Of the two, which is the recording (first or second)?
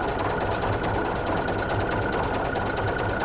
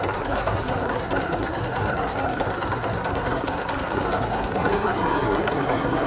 first